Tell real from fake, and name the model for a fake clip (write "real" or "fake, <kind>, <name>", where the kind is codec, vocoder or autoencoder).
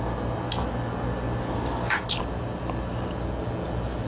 real